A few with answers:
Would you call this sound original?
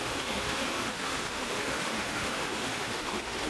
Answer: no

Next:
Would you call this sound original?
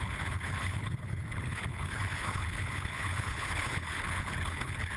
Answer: no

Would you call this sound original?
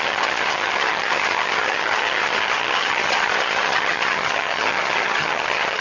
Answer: no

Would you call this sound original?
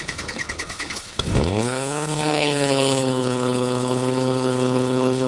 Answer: no